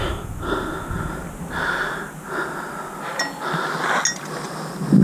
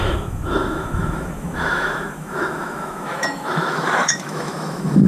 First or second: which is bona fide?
first